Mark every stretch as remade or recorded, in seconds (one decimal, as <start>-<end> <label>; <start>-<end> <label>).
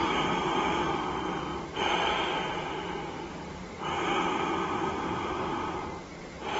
0.0-1.5 recorded; 1.5-2.2 remade; 2.2-6.6 recorded